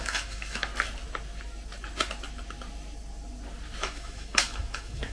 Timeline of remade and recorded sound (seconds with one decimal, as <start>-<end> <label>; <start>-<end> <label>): 0.0-0.7 remade; 0.7-3.8 recorded; 3.8-5.1 remade